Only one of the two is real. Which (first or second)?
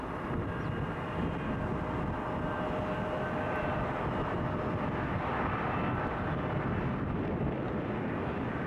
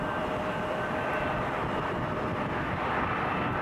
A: first